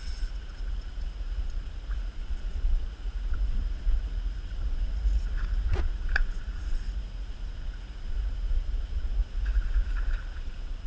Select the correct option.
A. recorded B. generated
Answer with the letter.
B